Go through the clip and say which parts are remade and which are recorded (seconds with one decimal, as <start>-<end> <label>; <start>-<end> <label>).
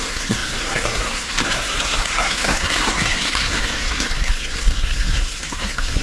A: 0.0-6.0 remade